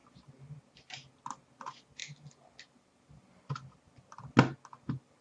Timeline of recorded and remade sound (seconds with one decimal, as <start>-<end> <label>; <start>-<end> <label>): 0.0-5.2 recorded